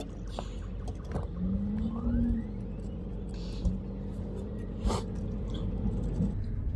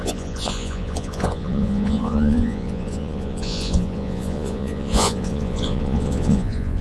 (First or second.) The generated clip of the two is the second